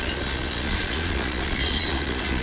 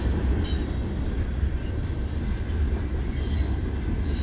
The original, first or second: second